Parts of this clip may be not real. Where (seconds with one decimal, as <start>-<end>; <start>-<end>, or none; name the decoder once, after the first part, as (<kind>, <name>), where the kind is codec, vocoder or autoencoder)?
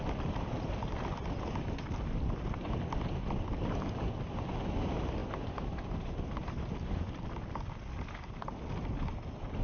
5.2-7.0 (vocoder, BigVGAN v2)